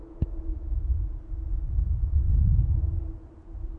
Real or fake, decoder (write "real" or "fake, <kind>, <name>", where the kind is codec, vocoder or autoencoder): fake, vocoder, Vocos